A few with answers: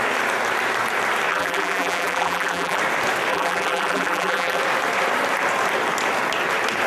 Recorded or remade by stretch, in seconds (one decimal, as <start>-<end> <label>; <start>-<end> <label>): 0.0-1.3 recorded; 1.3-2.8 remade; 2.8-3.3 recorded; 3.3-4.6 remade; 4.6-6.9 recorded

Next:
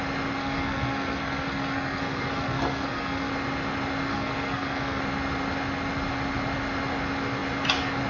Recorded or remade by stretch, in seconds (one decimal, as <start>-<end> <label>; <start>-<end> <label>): 0.0-0.4 recorded; 0.4-3.3 remade; 3.3-4.1 recorded; 4.1-5.0 remade; 5.0-8.1 recorded

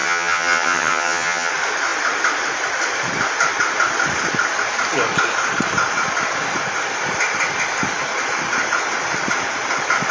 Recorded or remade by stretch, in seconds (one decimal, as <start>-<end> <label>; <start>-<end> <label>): 0.0-1.5 remade; 1.5-10.1 recorded